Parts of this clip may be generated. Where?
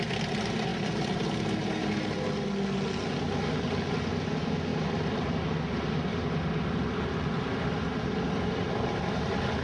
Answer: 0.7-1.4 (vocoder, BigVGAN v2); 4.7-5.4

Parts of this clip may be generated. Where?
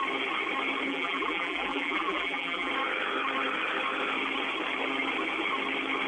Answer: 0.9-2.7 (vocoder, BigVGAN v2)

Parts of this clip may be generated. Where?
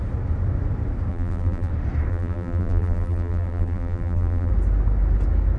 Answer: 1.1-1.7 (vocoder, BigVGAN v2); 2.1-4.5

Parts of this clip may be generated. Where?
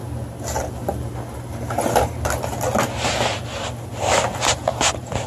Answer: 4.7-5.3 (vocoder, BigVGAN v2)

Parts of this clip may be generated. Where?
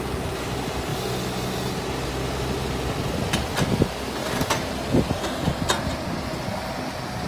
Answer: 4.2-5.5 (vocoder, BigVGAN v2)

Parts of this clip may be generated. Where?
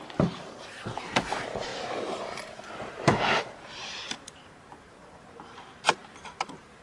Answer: 0.0-1.7 (vocoder, BigVGAN v2); 2.2-6.8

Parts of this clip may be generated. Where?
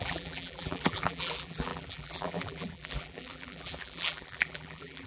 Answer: 0.0-5.1 (vocoder, BigVGAN v2)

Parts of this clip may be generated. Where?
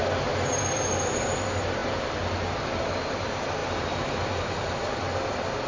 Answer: 3.6-4.3 (vocoder, BigVGAN v2)